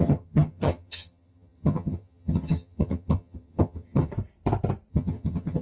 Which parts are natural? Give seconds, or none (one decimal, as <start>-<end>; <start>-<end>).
4.1-4.9